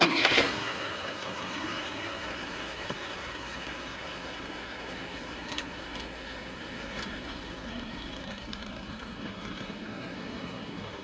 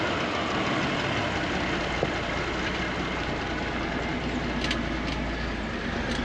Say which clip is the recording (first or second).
second